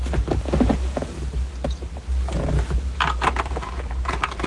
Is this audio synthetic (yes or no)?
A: no